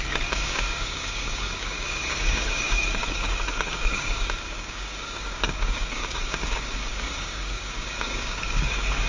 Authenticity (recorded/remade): remade